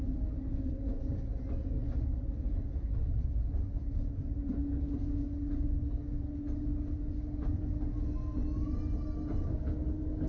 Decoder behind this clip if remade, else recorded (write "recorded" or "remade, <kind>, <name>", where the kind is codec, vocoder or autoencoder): recorded